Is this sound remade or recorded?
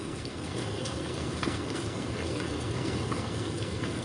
remade